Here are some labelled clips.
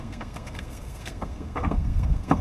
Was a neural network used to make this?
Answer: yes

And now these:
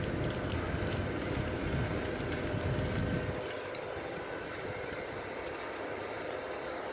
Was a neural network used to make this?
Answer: no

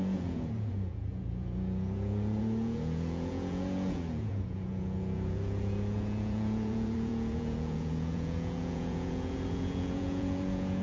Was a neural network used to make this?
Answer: yes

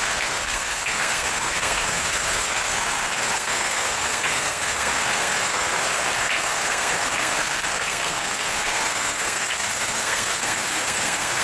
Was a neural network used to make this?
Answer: yes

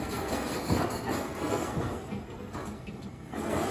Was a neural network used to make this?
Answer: yes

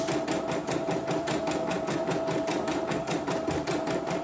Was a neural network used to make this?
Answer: no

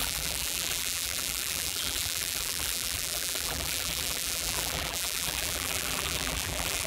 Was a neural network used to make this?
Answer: yes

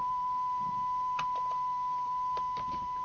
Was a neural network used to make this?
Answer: yes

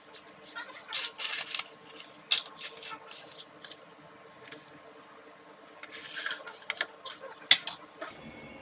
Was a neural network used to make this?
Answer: no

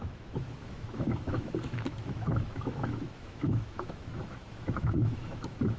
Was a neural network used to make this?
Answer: yes